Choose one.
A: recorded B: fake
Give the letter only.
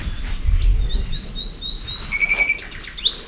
A